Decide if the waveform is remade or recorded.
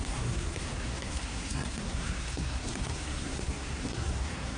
remade